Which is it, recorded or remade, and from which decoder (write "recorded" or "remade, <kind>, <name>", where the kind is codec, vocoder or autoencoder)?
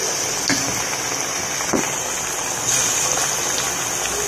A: recorded